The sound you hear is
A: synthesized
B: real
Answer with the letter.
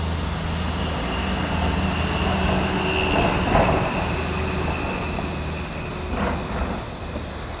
B